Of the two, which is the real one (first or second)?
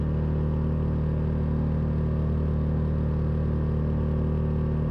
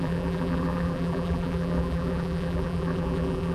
first